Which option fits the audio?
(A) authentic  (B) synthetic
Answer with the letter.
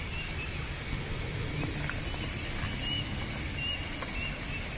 A